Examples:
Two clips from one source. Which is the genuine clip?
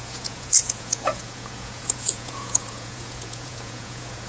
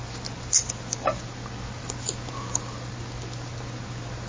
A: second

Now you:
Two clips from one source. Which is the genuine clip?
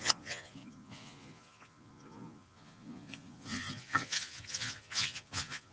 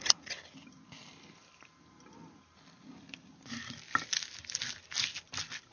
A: second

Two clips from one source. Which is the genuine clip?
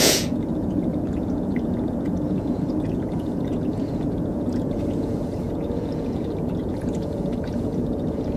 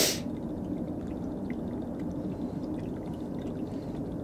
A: second